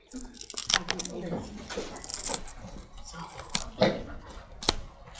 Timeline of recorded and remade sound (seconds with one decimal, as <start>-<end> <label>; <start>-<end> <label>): 0.0-5.2 recorded